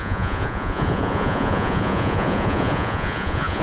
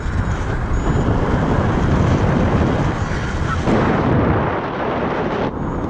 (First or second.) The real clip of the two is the second